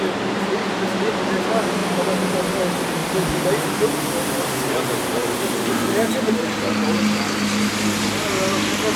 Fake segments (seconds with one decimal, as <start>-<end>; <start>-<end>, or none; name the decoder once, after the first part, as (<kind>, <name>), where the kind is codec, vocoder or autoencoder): 3.0-3.7 (vocoder, BigVGAN v2); 5.2-8.5